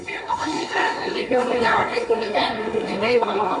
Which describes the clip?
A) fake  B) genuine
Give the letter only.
A